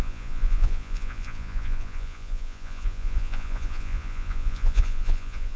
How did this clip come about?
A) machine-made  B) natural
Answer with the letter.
A